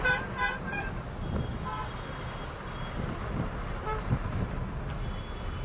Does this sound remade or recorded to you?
recorded